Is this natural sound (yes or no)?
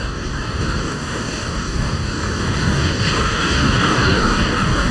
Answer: no